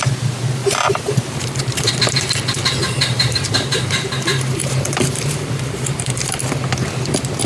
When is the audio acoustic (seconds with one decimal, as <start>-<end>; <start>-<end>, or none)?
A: 0.0-0.6; 1.9-2.8; 6.4-7.5